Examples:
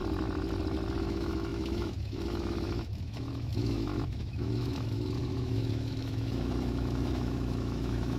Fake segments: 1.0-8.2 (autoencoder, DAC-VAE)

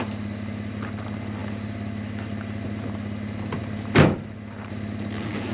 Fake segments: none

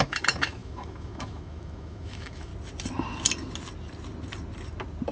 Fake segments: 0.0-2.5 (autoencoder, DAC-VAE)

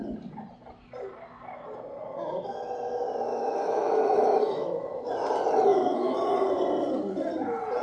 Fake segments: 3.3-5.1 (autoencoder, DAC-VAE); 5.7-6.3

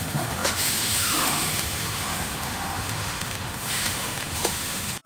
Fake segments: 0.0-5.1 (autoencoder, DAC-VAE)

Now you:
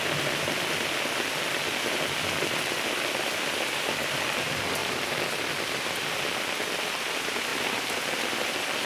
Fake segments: none